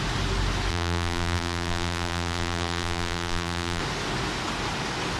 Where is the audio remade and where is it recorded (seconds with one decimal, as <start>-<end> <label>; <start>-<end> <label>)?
0.0-0.7 recorded; 0.7-3.8 remade; 3.8-5.2 recorded